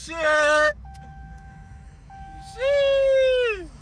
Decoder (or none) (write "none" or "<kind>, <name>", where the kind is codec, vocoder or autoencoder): autoencoder, DAC-VAE